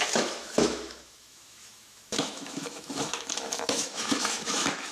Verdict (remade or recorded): remade